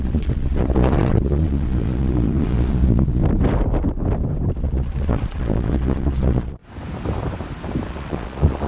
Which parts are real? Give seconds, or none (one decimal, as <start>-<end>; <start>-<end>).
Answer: 3.2-4.6; 6.6-7.9